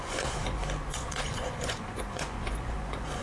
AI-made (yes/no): yes